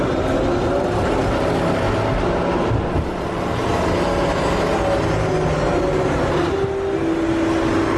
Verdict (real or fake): real